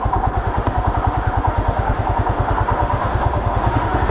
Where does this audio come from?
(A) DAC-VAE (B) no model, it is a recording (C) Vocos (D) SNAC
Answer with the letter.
A